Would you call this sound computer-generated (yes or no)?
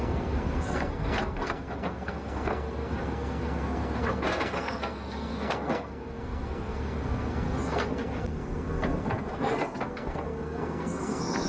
yes